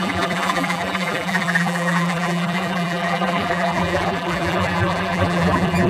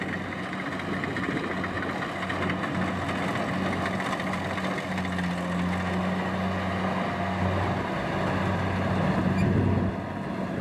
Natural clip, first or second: second